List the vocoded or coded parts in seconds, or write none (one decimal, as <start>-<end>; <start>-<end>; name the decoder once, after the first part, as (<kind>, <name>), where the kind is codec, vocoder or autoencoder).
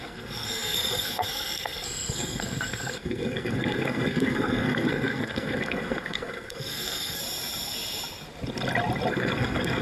0.0-7.2 (codec, SNAC); 9.1-9.8